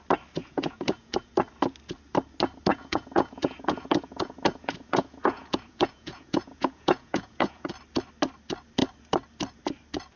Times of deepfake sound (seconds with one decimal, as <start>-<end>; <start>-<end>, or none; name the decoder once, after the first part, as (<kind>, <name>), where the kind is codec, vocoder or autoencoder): 0.4-1.3 (vocoder, Vocos); 2.7-7.7